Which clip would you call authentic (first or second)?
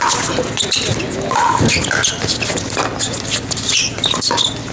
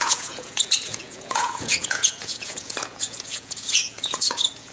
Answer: first